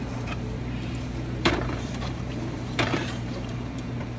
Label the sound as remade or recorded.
remade